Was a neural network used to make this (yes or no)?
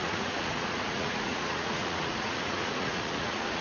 yes